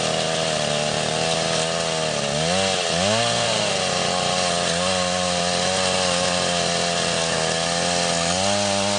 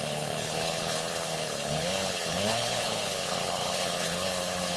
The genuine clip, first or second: first